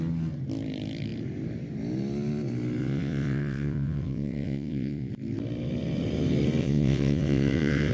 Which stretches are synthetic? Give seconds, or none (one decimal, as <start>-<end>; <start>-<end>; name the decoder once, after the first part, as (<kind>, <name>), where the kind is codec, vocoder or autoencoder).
2.8-5.1 (vocoder, WaveNeXt); 6.6-7.9